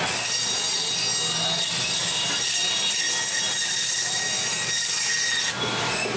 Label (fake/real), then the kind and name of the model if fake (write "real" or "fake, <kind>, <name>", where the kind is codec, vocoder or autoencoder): real